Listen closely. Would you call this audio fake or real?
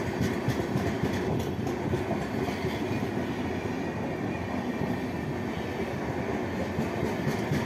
real